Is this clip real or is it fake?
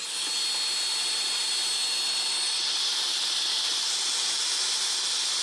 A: real